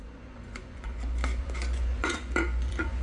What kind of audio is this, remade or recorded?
remade